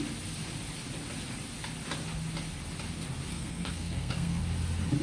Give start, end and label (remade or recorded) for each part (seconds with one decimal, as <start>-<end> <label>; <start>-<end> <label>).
0.0-3.3 recorded; 3.3-4.4 remade; 4.4-5.0 recorded